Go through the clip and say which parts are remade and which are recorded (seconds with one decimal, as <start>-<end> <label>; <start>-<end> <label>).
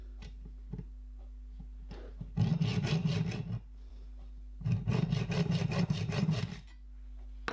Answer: 0.0-4.9 recorded; 4.9-6.4 remade; 6.4-7.5 recorded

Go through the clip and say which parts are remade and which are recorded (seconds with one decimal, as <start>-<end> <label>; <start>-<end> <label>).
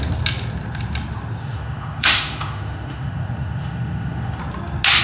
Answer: 0.0-1.4 recorded; 1.4-4.4 remade; 4.4-5.0 recorded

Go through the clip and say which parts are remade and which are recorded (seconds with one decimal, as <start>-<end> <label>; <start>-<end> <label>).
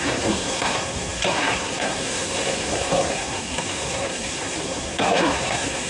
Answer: 0.0-5.9 remade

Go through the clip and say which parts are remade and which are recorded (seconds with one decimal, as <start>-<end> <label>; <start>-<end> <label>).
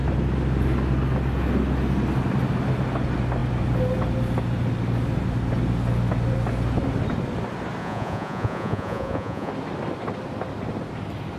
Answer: 0.0-7.8 recorded; 7.8-9.5 remade; 9.5-11.4 recorded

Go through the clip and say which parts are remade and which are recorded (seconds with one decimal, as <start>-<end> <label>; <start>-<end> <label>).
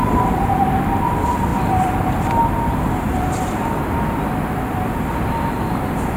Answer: 0.0-1.5 recorded; 1.5-2.4 remade; 2.4-3.1 recorded; 3.1-5.1 remade; 5.1-6.2 recorded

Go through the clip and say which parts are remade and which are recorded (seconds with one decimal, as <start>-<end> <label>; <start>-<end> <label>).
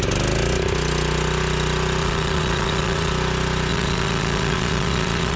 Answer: 0.0-2.0 recorded; 2.0-3.1 remade; 3.1-3.7 recorded; 3.7-5.4 remade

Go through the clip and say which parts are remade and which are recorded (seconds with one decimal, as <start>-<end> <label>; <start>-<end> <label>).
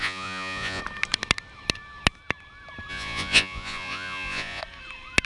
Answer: 0.0-0.8 remade; 0.8-2.9 recorded; 2.9-4.6 remade; 4.6-5.3 recorded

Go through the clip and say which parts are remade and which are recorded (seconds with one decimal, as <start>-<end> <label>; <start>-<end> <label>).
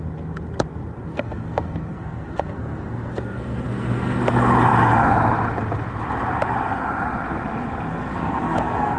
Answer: 0.0-1.1 recorded; 1.1-4.2 remade; 4.2-7.9 recorded; 7.9-9.0 remade